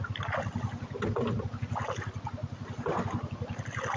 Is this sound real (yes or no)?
yes